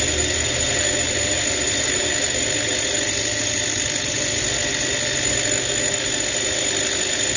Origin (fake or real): real